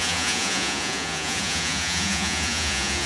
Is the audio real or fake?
fake